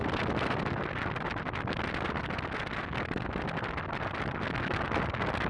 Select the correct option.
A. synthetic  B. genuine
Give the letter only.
B